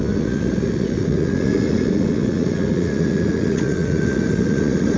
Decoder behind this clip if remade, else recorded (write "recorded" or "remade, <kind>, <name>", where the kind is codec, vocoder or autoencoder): remade, vocoder, Vocos